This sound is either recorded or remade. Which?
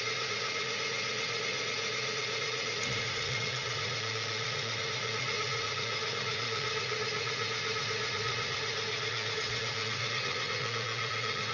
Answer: remade